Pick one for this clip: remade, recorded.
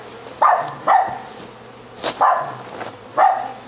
recorded